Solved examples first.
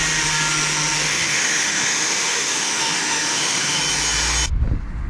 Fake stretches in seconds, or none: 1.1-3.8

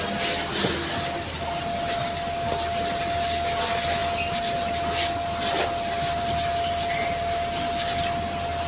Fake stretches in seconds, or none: none

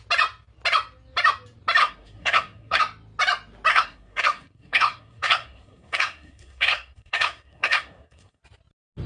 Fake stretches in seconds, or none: 1.8-2.8; 3.7-8.4

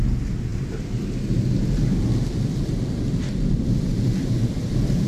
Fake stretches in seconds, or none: none

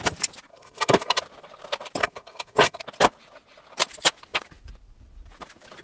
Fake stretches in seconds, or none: 0.5-1.2; 2.0-2.8